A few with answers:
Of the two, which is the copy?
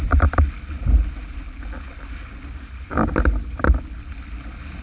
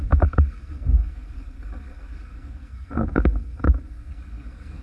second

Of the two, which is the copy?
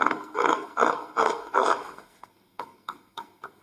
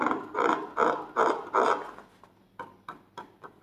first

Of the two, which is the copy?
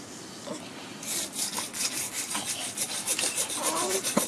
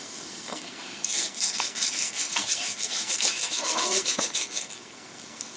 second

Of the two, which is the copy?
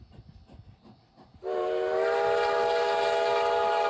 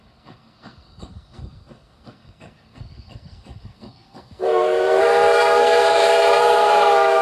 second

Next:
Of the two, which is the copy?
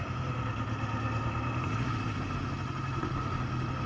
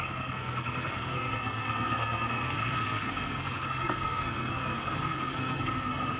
second